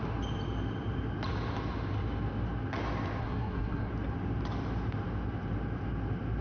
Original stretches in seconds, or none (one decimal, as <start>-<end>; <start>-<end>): 0.0-3.2; 3.9-6.4